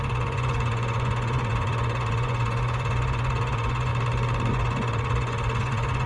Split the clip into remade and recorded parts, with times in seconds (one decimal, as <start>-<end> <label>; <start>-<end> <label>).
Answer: 0.0-3.9 remade; 3.9-4.5 recorded; 4.5-6.1 remade